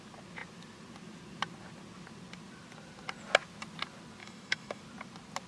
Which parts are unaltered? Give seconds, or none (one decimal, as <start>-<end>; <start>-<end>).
0.0-4.2; 4.8-5.5